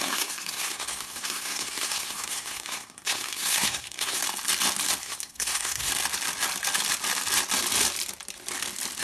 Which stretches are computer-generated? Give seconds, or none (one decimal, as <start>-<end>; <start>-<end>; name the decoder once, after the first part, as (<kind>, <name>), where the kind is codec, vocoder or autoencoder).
0.0-4.2 (codec, SNAC); 5.0-5.9